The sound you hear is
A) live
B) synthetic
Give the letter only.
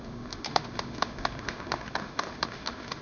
B